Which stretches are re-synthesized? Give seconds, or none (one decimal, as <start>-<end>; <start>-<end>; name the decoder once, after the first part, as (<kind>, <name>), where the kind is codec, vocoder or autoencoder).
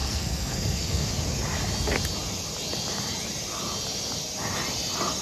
0.0-1.1 (codec, SNAC)